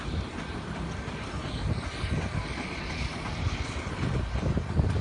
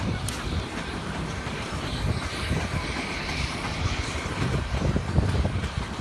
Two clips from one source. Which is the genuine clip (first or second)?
first